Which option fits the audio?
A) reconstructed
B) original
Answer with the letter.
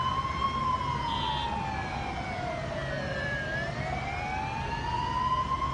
B